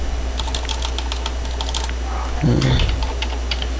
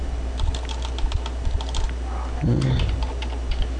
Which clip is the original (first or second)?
first